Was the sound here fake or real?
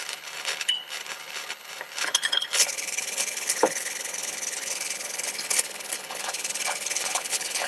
fake